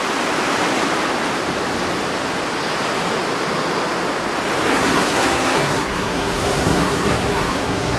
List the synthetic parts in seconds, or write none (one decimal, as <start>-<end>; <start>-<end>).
4.7-8.0